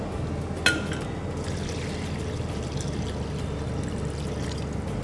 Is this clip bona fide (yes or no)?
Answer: yes